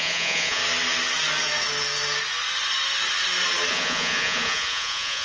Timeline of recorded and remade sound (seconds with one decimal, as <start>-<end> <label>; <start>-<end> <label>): 0.0-0.6 remade; 0.6-3.7 recorded; 3.7-5.2 remade